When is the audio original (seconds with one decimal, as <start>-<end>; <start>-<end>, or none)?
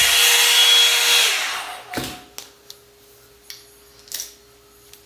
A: 0.0-5.1